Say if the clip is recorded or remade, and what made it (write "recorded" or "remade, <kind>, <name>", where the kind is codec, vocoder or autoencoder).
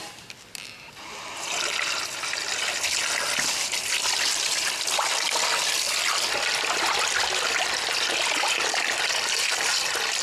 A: recorded